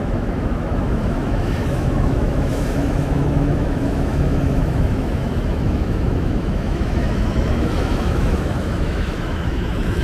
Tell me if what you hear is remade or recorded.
remade